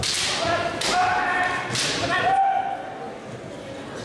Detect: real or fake real